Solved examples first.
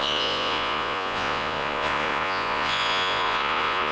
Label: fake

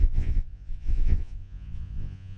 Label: fake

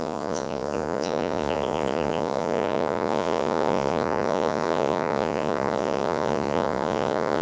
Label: fake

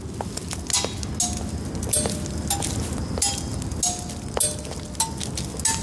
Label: real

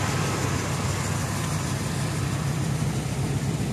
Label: real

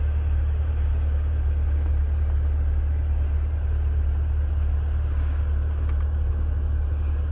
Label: real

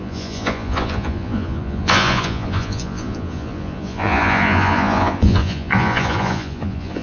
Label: fake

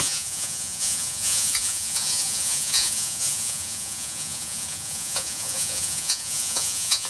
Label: fake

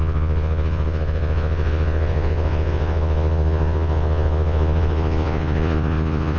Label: fake